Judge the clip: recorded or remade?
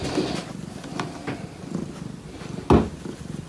recorded